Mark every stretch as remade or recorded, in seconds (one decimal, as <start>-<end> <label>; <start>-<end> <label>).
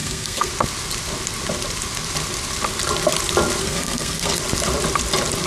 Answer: 0.0-0.5 remade; 0.5-3.6 recorded; 3.6-4.4 remade; 4.4-5.5 recorded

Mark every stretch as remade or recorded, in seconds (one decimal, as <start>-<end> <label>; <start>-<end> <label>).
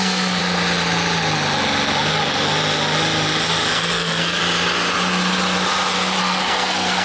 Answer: 0.0-0.4 remade; 0.4-3.7 recorded; 3.7-4.4 remade; 4.4-6.2 recorded; 6.2-7.0 remade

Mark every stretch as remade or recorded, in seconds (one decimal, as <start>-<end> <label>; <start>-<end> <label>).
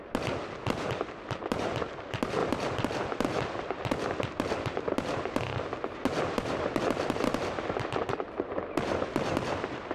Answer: 0.0-9.9 recorded